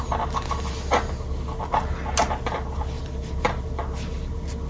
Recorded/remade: recorded